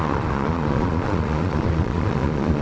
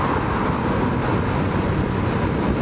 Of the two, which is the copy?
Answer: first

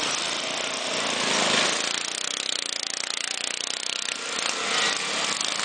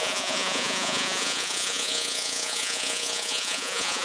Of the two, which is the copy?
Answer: second